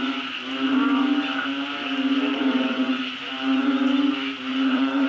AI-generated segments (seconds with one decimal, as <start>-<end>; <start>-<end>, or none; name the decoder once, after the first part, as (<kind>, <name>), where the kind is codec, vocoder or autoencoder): 2.3-3.0 (vocoder, WaveNeXt); 4.5-5.1